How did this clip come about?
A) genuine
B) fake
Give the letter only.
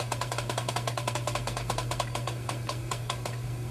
B